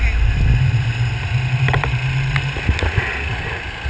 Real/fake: real